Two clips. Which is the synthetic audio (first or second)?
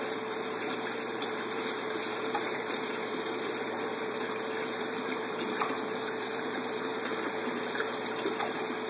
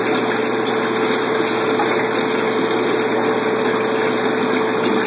first